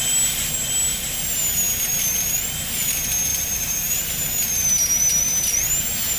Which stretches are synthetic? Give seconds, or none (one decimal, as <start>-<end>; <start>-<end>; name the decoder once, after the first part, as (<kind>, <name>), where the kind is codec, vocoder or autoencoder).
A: 3.3-4.1 (vocoder, BigVGAN v2)